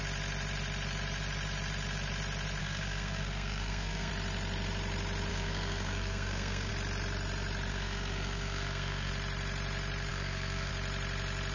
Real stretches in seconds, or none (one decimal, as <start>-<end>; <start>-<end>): 0.0-2.6; 4.1-5.3; 6.7-7.7; 9.1-10.1; 10.7-11.5

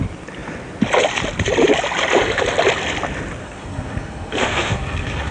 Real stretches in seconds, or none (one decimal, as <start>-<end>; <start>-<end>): 0.0-3.4

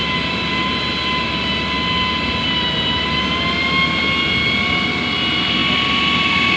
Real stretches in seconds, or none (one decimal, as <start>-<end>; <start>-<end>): 0.0-6.6

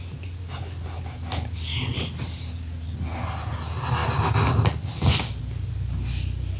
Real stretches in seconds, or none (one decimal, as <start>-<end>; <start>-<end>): 0.0-6.6